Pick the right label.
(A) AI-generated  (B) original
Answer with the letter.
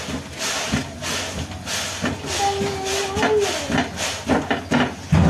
B